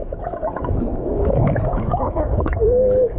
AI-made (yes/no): yes